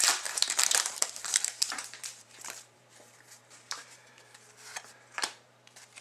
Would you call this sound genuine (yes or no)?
no